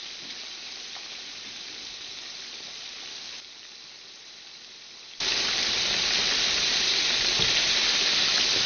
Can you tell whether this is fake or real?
real